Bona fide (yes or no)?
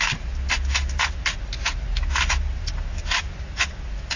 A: yes